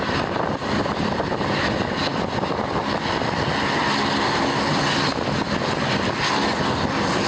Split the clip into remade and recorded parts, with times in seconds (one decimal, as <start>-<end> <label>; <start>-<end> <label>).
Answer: 0.0-7.3 recorded